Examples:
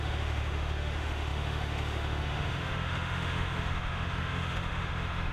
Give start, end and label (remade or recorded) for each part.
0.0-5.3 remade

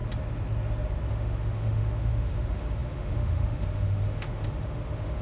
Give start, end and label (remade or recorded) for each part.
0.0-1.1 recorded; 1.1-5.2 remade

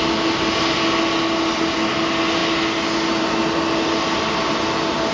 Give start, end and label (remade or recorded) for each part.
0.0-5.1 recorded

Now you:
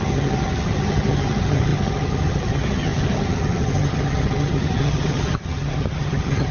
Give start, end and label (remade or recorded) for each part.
0.0-6.5 remade